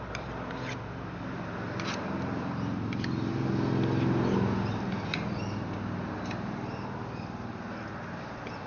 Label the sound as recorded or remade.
recorded